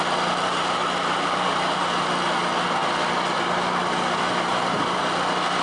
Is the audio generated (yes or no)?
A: no